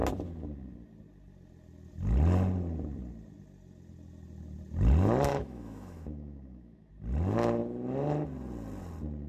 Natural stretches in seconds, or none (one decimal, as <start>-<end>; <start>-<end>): 0.0-5.3; 6.9-9.3